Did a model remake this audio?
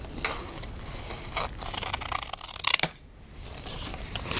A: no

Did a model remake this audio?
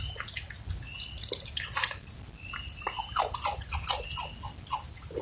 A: no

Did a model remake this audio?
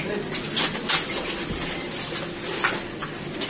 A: no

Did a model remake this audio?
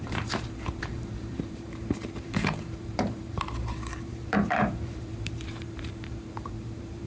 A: yes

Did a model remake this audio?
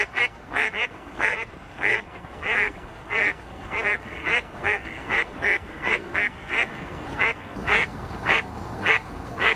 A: yes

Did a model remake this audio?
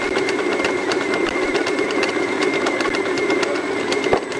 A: yes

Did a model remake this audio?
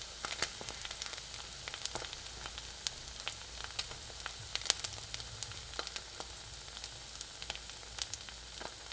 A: no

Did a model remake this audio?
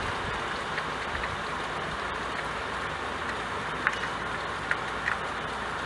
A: no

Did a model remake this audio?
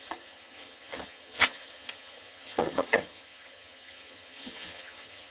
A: yes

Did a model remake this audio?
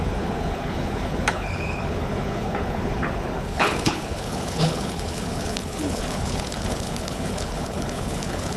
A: yes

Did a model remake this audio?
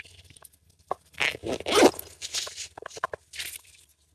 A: no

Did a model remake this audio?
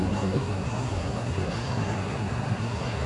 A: yes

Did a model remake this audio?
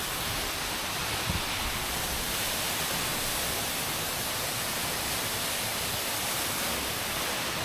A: no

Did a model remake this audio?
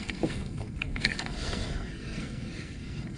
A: yes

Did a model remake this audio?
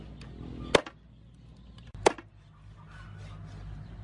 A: no